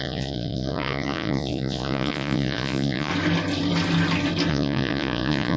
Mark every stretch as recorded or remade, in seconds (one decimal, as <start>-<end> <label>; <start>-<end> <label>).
0.0-3.1 remade; 3.1-4.5 recorded; 4.5-5.6 remade